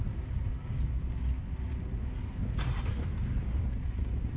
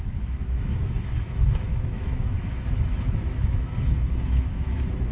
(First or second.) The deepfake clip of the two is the second